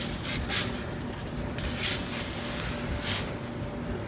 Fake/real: real